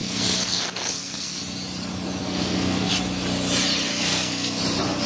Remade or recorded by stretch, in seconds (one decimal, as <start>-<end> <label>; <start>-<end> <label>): 0.0-1.4 remade; 1.4-2.2 recorded; 2.2-2.9 remade; 2.9-3.9 recorded; 3.9-4.6 remade; 4.6-5.1 recorded